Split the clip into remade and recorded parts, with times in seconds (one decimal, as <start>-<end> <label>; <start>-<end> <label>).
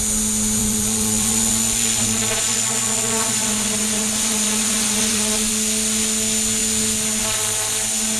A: 0.0-0.6 recorded; 0.6-5.5 remade; 5.5-8.2 recorded